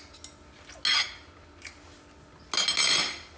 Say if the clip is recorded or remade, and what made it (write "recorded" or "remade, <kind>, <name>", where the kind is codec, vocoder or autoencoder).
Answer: recorded